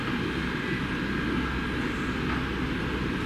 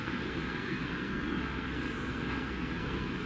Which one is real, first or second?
first